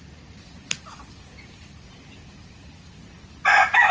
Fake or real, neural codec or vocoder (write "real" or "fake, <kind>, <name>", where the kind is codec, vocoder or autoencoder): real